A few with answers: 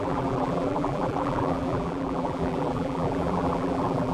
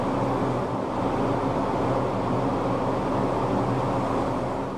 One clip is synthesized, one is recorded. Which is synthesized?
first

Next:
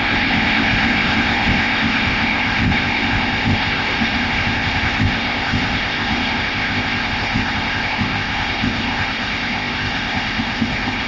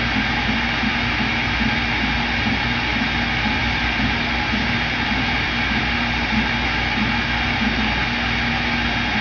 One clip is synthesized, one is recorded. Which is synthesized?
first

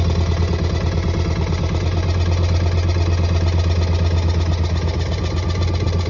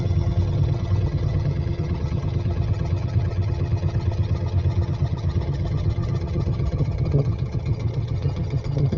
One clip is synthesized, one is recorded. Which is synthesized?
second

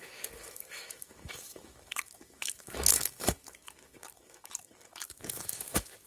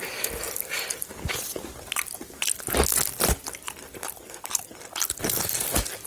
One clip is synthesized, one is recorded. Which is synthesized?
first